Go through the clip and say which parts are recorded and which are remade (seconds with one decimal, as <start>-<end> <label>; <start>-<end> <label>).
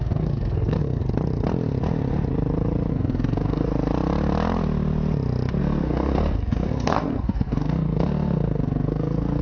0.0-1.0 remade; 1.0-2.9 recorded; 2.9-3.7 remade; 3.7-5.6 recorded; 5.6-9.4 remade